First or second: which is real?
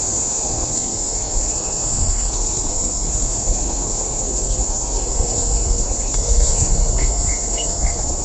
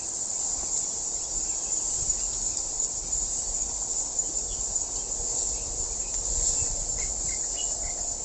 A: second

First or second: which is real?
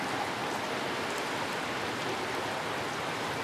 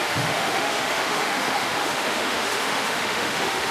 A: first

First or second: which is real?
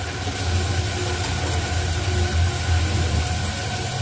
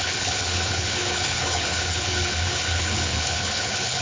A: first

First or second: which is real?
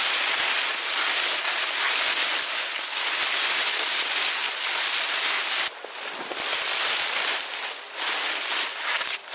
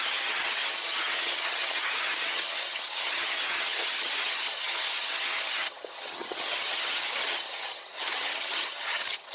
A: first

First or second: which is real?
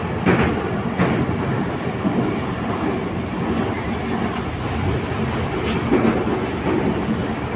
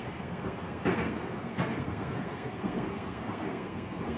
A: first